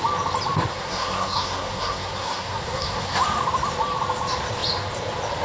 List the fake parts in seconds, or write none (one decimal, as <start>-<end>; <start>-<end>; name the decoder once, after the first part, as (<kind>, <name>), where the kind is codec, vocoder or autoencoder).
0.7-3.2 (codec, SNAC)